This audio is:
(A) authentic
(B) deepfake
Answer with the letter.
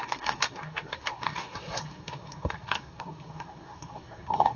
B